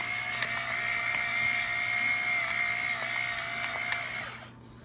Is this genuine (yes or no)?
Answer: yes